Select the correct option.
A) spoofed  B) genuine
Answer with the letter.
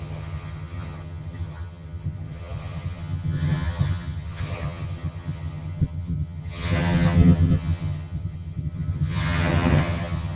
A